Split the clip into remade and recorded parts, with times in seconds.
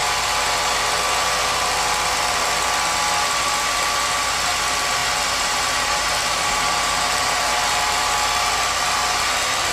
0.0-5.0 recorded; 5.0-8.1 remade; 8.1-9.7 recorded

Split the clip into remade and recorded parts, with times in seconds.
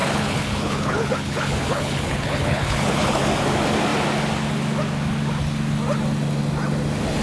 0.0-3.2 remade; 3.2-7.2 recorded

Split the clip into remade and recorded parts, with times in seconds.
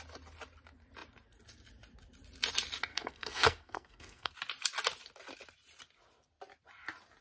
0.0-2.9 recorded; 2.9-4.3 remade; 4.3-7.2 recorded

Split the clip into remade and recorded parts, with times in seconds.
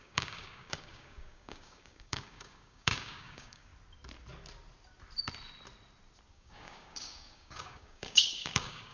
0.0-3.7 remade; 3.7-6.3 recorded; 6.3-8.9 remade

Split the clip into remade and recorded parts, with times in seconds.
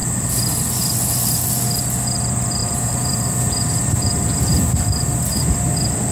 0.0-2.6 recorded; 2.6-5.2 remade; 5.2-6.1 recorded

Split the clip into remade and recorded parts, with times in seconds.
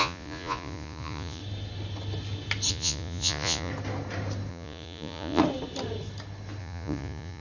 0.0-1.4 remade; 1.4-2.7 recorded; 2.7-3.7 remade; 3.7-4.5 recorded; 4.5-5.4 remade; 5.4-6.6 recorded; 6.6-7.4 remade